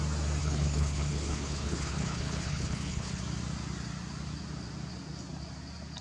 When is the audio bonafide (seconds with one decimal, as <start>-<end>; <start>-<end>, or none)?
0.0-0.4; 3.2-6.0